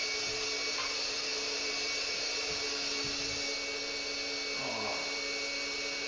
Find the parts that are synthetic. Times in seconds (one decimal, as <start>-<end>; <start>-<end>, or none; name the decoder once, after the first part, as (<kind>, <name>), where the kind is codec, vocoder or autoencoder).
none